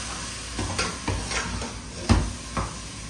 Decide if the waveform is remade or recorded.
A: recorded